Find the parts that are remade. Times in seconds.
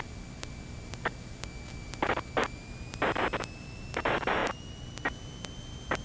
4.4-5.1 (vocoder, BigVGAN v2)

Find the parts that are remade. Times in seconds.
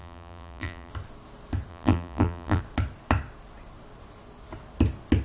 0.0-0.9 (vocoder, BigVGAN v2); 1.7-2.6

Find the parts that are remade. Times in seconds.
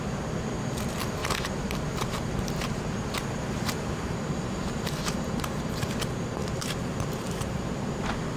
1.2-5.9 (vocoder, BigVGAN v2); 6.4-8.4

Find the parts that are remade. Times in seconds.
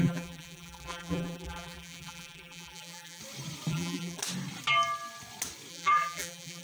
0.0-3.2 (vocoder, BigVGAN v2); 3.7-4.2; 5.7-6.6